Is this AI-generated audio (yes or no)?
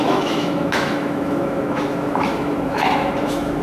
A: yes